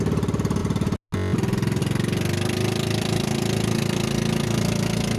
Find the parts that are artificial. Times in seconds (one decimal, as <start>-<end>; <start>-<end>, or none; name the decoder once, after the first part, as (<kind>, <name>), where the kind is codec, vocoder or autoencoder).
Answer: none